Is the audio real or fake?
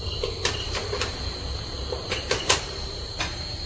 fake